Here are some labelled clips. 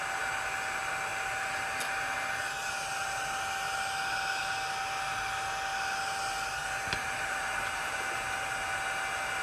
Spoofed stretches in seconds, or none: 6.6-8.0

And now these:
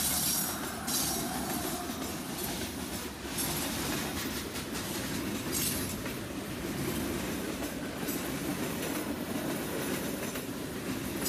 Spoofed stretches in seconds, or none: none